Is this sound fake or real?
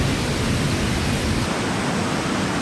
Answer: real